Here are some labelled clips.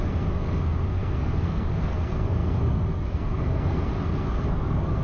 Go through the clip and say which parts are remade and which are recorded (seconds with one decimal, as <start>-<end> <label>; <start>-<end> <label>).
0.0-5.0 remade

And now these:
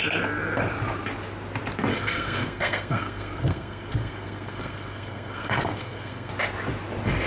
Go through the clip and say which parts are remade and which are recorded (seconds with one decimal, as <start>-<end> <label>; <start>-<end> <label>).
0.0-1.9 recorded; 1.9-6.3 remade; 6.3-7.3 recorded

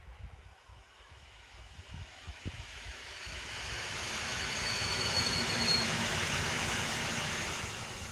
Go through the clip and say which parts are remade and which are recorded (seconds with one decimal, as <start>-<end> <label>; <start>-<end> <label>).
0.0-8.1 remade

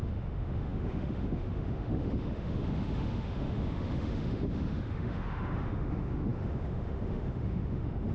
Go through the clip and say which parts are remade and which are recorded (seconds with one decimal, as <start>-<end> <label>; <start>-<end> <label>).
0.0-8.1 remade

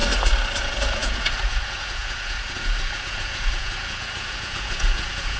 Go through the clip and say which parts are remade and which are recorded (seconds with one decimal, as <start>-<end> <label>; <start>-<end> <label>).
0.0-0.6 recorded; 0.6-5.4 remade

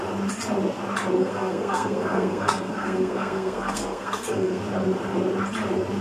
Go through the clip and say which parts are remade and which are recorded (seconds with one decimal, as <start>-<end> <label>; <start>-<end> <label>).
0.0-1.2 recorded; 1.2-4.6 remade; 4.6-6.0 recorded